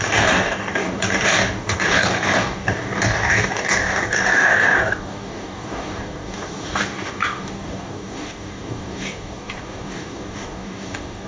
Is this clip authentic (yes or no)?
no